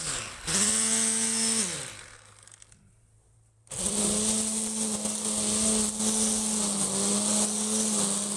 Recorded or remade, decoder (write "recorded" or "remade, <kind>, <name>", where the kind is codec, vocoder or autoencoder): recorded